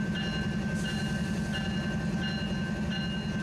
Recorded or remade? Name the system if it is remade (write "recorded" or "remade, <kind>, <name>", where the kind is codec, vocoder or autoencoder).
recorded